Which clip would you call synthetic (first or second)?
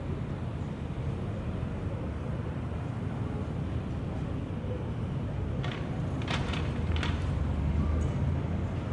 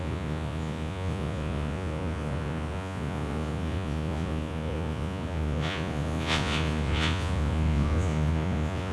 second